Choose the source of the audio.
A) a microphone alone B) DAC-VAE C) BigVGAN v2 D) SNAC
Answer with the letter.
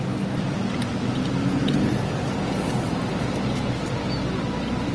A